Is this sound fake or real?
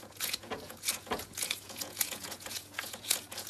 fake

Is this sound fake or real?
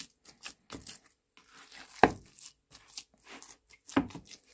real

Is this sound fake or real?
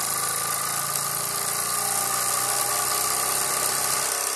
real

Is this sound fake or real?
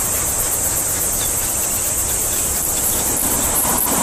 fake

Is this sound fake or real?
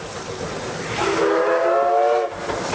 real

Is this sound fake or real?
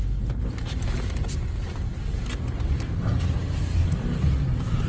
real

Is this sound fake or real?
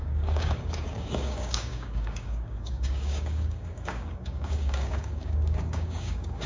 fake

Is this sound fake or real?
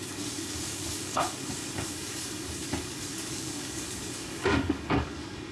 fake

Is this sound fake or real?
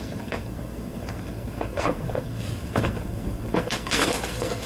fake